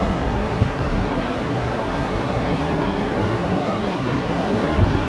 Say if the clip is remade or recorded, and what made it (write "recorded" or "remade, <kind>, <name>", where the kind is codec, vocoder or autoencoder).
remade, codec, SNAC